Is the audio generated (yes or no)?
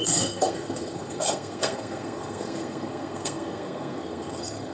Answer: yes